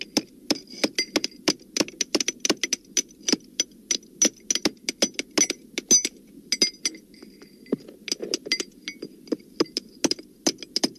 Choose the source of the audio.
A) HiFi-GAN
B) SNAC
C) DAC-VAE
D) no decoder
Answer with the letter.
D